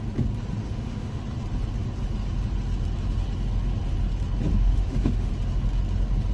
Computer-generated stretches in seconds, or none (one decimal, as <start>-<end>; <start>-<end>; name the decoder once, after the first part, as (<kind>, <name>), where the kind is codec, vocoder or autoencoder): 0.6-1.2 (autoencoder, DAC-VAE); 4.5-5.3